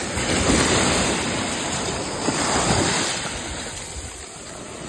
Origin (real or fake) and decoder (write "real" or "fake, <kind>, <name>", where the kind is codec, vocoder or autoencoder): fake, vocoder, BigVGAN v2